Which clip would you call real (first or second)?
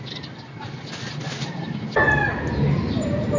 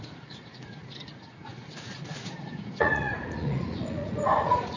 first